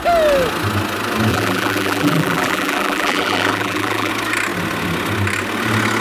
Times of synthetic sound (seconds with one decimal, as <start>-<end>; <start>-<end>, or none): 1.3-4.1